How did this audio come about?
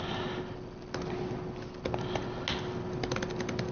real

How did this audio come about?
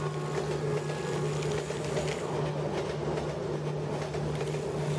real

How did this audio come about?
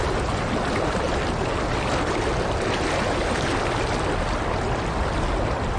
real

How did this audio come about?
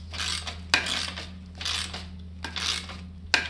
real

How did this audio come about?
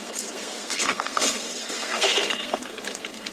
fake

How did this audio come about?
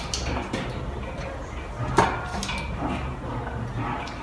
real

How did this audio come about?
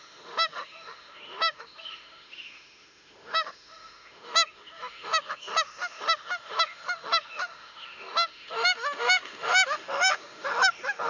fake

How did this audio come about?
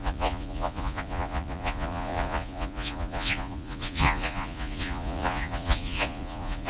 fake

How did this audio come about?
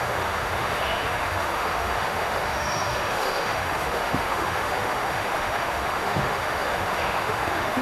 fake